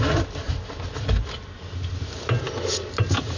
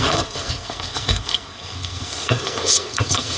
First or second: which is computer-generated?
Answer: second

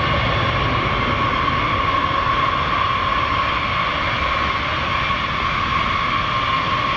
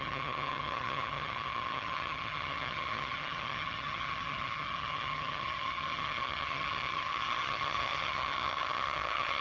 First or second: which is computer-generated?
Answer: second